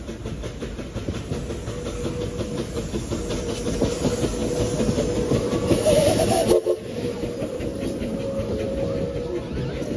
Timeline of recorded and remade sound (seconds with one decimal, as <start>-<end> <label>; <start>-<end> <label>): 0.0-10.0 recorded